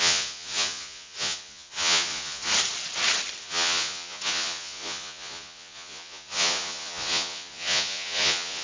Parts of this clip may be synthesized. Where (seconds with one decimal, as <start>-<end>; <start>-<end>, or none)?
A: 0.0-2.5; 3.4-8.6